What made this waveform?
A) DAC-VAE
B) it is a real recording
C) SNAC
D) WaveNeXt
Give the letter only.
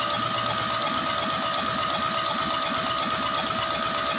B